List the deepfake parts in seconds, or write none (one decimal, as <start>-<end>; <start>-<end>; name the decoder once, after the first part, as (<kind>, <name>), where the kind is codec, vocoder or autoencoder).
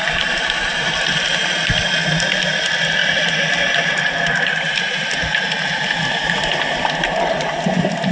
0.0-0.9 (vocoder, BigVGAN v2); 3.0-8.1